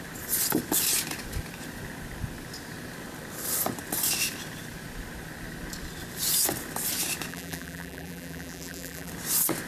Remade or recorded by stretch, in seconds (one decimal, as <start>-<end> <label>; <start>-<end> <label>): 0.0-7.3 recorded; 7.3-9.1 remade; 9.1-9.7 recorded